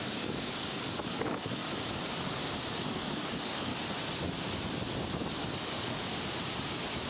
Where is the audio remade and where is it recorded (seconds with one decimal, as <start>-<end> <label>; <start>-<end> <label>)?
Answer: 0.0-1.6 remade; 1.6-2.7 recorded; 2.7-3.7 remade; 3.7-5.3 recorded; 5.3-6.1 remade; 6.1-7.1 recorded